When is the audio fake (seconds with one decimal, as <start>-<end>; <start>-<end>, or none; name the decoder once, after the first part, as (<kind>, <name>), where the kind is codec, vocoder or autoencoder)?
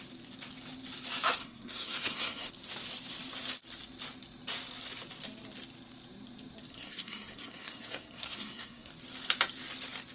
1.4-2.5 (codec, SNAC); 6.7-8.9